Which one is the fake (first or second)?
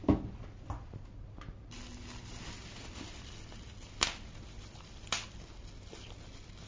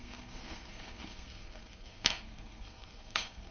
second